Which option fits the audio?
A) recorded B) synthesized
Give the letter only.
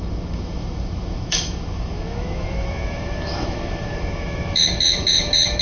B